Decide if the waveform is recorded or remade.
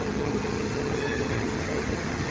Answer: remade